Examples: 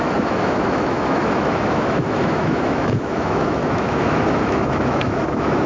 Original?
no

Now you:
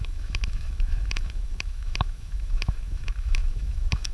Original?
no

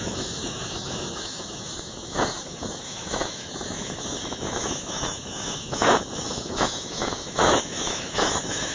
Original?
no